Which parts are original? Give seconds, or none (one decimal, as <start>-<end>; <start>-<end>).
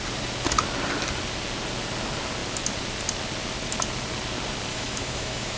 0.0-4.7